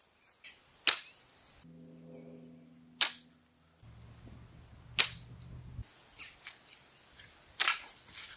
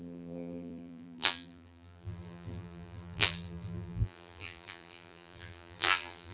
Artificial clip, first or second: second